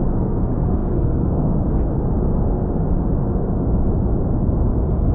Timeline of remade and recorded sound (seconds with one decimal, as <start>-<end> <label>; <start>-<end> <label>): 0.0-1.9 remade; 1.9-5.1 recorded